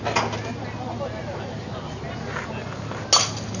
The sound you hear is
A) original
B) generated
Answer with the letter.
A